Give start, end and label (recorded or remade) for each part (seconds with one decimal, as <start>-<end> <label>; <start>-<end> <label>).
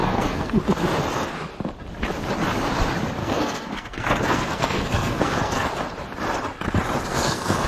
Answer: 0.0-0.6 remade; 0.6-3.2 recorded; 3.2-5.7 remade; 5.7-7.1 recorded; 7.1-7.7 remade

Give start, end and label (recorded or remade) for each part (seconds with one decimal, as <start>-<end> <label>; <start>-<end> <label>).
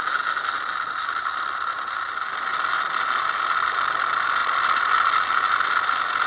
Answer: 0.0-6.3 recorded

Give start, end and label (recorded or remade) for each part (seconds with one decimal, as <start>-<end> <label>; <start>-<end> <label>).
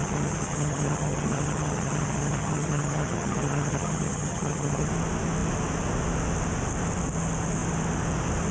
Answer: 0.0-4.9 remade; 4.9-8.5 recorded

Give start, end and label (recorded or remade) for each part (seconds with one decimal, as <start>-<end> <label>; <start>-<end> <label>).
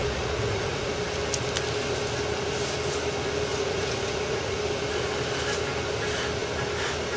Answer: 0.0-0.9 remade; 0.9-3.5 recorded; 3.5-4.6 remade; 4.6-7.2 recorded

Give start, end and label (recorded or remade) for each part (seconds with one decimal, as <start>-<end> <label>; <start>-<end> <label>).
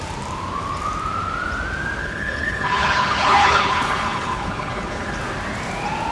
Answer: 0.0-2.0 recorded; 2.0-5.2 remade; 5.2-6.1 recorded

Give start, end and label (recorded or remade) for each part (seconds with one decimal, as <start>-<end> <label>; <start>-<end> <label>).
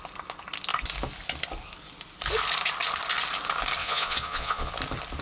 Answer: 0.0-3.8 recorded; 3.8-4.7 remade; 4.7-5.2 recorded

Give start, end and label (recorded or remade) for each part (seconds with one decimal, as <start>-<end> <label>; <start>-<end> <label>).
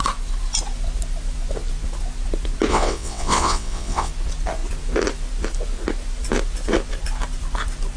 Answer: 0.0-2.7 recorded; 2.7-4.1 remade; 4.1-8.0 recorded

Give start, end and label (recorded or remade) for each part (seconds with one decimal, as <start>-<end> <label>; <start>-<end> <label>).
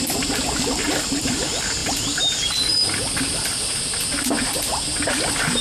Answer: 0.0-1.8 recorded; 1.8-3.7 remade; 3.7-5.6 recorded